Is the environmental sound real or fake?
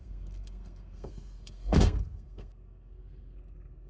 fake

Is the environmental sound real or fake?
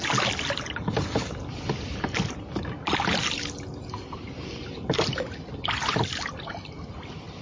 real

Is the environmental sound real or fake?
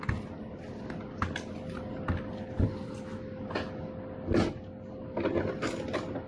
real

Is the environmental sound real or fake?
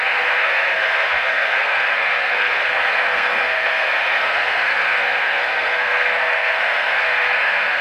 fake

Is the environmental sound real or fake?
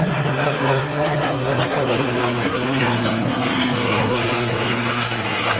fake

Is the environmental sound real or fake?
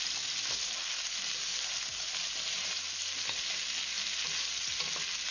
real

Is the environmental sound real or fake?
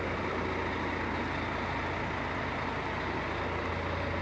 real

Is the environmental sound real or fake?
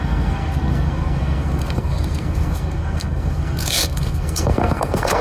fake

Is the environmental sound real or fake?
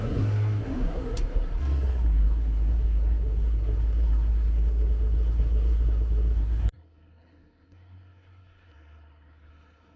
fake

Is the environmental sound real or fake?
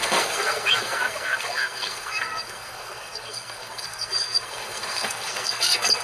fake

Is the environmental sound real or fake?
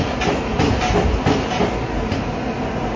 real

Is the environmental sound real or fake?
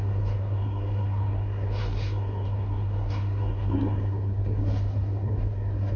fake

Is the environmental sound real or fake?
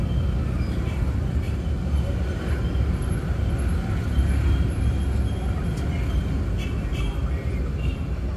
real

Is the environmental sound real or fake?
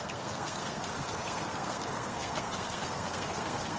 fake